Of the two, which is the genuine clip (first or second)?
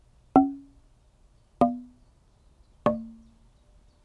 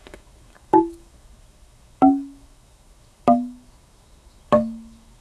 first